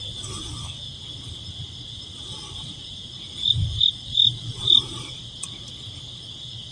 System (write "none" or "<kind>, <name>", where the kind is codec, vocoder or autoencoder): vocoder, BigVGAN v2